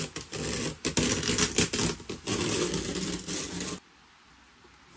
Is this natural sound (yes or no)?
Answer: yes